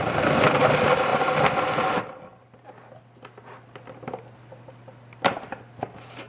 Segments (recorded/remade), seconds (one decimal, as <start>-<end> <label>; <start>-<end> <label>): 0.0-6.3 recorded